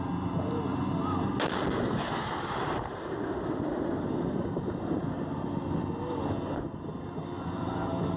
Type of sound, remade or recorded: recorded